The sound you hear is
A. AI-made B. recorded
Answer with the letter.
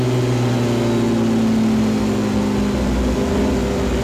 B